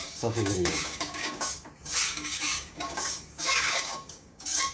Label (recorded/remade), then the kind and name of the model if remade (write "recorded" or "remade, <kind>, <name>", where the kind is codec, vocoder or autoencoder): remade, codec, DAC